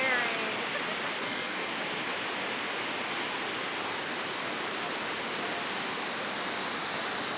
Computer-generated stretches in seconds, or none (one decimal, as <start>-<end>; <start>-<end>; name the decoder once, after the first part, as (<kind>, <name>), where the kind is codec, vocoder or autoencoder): 1.2-1.7 (codec, SNAC)